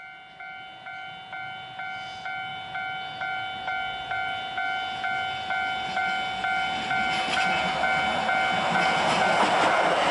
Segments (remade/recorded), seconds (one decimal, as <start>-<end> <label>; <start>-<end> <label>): 0.0-10.1 recorded